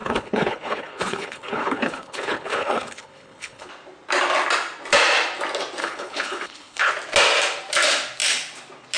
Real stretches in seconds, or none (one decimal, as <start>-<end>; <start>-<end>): 3.7-5.8; 6.9-9.0